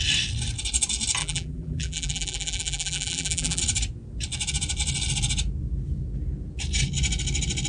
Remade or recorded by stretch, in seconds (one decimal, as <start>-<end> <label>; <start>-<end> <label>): 0.0-1.2 recorded; 1.2-3.6 remade; 3.6-7.7 recorded